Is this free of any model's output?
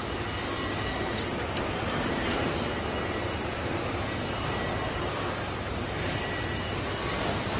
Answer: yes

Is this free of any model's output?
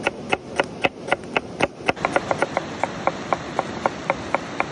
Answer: yes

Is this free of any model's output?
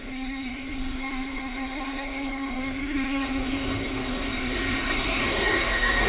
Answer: no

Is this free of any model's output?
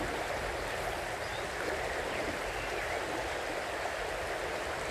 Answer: yes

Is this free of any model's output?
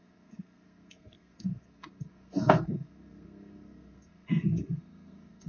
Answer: no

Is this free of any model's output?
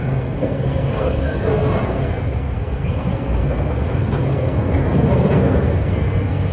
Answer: no